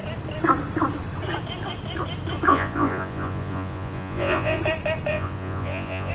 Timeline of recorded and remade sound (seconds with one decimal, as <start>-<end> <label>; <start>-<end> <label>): 0.0-2.5 recorded; 2.5-4.6 remade; 4.6-5.1 recorded; 5.1-6.1 remade